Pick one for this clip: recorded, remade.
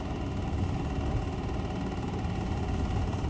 recorded